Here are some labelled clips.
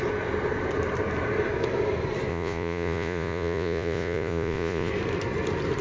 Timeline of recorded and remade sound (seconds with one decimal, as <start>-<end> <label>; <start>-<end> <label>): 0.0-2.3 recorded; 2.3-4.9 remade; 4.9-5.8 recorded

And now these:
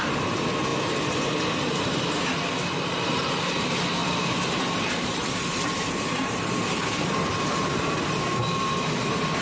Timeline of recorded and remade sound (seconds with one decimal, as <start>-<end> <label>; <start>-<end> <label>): 0.0-0.7 recorded; 0.7-2.2 remade; 2.2-4.0 recorded; 4.0-8.2 remade; 8.2-9.4 recorded

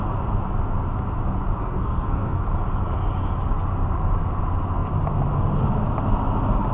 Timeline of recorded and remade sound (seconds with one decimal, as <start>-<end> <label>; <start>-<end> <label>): 0.0-1.6 recorded; 1.6-2.4 remade; 2.4-6.7 recorded

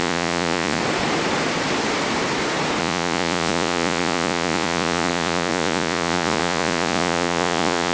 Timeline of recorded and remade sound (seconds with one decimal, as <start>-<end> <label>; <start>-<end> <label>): 0.0-0.8 remade; 0.8-2.8 recorded; 2.8-7.9 remade

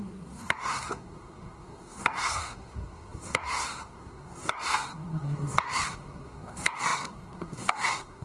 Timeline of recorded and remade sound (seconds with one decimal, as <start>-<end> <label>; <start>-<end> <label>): 0.0-8.2 remade